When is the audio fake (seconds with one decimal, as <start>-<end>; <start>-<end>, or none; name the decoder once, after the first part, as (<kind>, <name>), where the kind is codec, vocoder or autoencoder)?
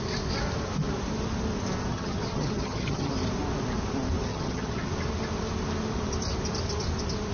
1.9-3.1 (vocoder, HiFi-GAN); 4.3-4.9